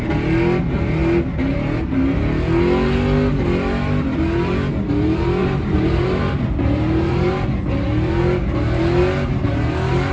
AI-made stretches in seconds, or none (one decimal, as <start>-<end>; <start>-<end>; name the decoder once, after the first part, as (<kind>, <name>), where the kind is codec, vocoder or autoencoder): 5.4-7.5 (vocoder, BigVGAN v2)